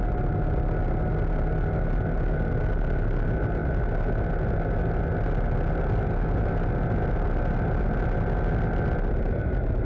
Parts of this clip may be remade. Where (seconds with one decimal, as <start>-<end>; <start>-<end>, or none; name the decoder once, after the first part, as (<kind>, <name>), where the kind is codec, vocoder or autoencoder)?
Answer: none